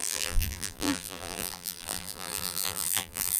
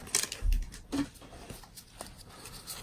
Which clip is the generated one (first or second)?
first